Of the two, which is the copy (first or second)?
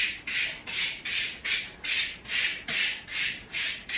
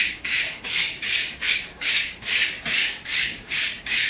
second